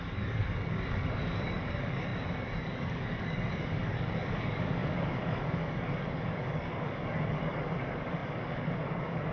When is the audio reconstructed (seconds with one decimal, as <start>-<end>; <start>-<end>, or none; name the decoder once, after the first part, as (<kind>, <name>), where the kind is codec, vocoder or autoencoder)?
0.0-9.3 (codec, DAC)